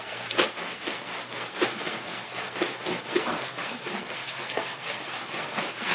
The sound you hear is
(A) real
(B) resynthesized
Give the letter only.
B